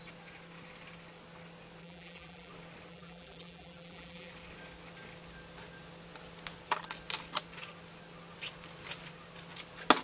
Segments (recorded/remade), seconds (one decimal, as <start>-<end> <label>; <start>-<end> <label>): 0.0-1.8 recorded; 1.8-2.5 remade; 2.5-2.9 recorded; 2.9-4.3 remade; 4.3-10.0 recorded